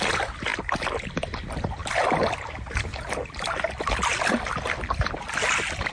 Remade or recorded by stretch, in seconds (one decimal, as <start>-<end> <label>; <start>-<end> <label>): 0.0-5.9 recorded